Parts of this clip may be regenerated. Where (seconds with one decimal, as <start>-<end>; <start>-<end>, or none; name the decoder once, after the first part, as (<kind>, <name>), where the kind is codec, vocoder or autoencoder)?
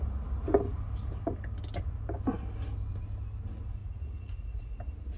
3.8-4.8 (vocoder, Vocos)